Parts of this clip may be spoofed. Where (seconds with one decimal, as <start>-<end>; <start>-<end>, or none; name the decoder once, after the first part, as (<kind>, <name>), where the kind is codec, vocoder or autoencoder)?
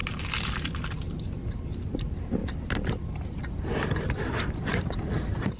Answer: 1.1-2.4 (vocoder, BigVGAN v2); 4.1-5.6